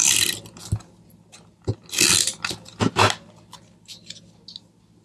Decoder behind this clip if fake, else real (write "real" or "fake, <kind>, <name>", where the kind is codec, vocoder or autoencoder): real